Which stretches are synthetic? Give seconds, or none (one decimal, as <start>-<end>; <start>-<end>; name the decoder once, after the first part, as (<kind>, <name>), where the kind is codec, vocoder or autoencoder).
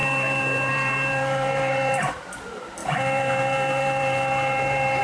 0.0-5.0 (vocoder, BigVGAN v2)